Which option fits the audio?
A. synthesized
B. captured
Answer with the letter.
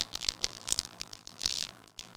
A